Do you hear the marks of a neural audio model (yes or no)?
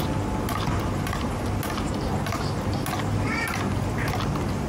no